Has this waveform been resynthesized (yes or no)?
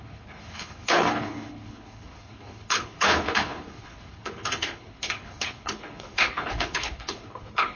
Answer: yes